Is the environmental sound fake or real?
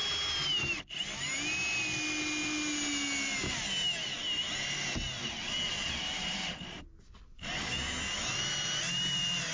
real